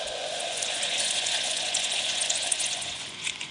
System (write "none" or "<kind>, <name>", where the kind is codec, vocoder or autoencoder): vocoder, Vocos